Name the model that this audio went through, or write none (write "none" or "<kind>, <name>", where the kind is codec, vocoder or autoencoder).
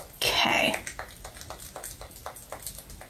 none